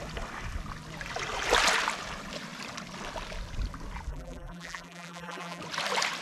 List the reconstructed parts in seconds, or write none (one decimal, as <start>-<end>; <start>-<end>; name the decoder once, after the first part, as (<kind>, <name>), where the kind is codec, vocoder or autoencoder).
4.1-5.6 (vocoder, BigVGAN v2)